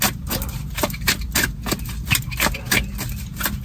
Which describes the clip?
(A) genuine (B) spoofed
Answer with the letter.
A